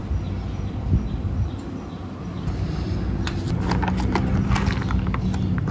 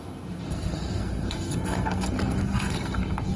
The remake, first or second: second